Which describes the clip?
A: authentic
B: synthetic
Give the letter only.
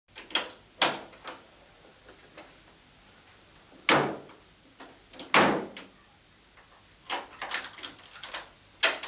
A